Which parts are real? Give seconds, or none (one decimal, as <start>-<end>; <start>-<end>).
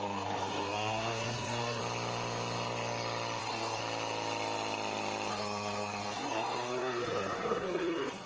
1.8-3.4; 3.8-5.3